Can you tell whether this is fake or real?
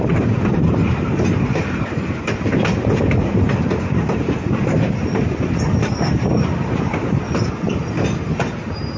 fake